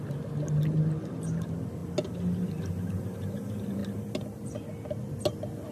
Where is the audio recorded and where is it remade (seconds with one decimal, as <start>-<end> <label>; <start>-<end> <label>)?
0.0-5.7 recorded